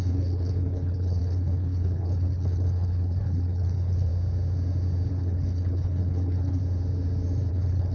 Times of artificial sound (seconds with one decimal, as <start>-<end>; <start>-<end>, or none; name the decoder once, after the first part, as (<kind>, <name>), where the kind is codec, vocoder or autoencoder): 0.0-4.1 (codec, HILCodec); 5.1-6.6; 7.5-7.9